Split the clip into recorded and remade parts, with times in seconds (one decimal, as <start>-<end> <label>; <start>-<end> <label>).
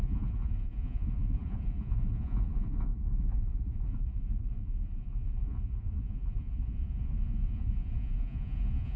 0.0-9.0 remade